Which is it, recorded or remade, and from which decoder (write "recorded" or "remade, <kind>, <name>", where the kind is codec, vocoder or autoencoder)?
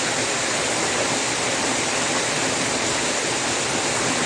recorded